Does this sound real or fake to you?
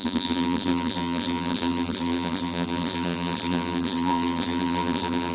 fake